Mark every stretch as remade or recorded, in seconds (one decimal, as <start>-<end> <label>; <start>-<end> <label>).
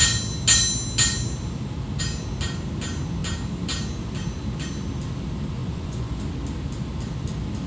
0.0-5.6 recorded; 5.6-6.2 remade; 6.2-7.7 recorded